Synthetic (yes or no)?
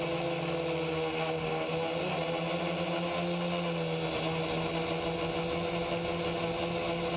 no